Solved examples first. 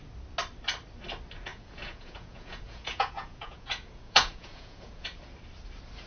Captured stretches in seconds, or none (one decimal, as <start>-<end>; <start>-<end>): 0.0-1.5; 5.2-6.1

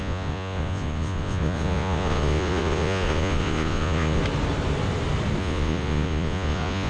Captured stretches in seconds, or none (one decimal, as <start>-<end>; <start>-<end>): 4.2-5.4

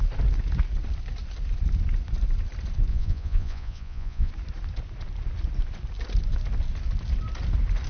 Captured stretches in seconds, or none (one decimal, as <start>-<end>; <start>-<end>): 0.0-2.9; 4.3-7.9

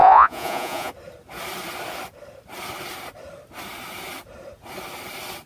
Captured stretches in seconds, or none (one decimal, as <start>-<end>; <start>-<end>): 0.9-5.5

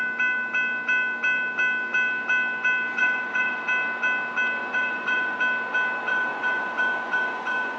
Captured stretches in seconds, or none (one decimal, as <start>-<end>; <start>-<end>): 0.0-3.0; 3.6-4.6; 5.4-6.1